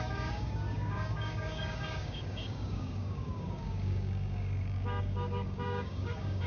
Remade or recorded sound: remade